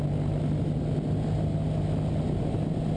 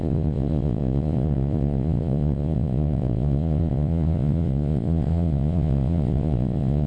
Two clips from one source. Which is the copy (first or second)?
second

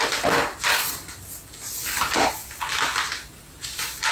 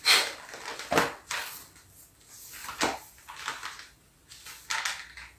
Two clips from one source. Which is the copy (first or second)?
first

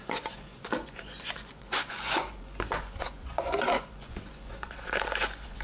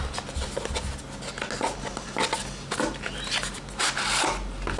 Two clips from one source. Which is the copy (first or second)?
first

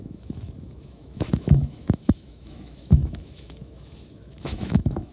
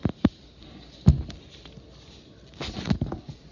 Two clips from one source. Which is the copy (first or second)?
first